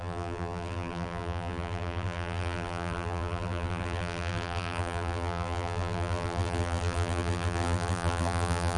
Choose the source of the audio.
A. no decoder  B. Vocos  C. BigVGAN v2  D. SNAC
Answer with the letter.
C